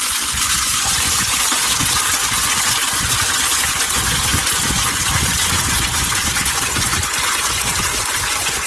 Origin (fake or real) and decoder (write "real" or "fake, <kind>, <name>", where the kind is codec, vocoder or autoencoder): fake, vocoder, Vocos